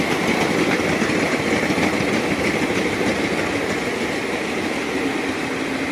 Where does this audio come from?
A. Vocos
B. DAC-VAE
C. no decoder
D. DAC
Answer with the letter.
C